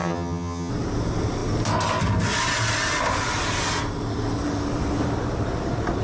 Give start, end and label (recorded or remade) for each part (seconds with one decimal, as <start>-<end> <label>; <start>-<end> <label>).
0.0-0.7 remade; 0.7-6.0 recorded